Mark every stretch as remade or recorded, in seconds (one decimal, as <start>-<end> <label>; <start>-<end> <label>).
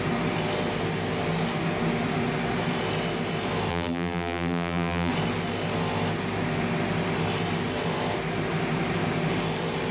0.0-3.7 recorded; 3.7-5.1 remade; 5.1-9.9 recorded